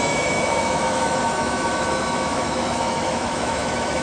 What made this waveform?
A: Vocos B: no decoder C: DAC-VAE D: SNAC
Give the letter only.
C